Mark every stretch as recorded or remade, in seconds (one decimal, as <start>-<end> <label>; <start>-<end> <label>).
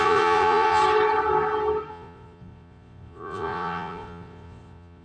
0.0-0.8 remade; 0.8-1.9 recorded; 1.9-5.0 remade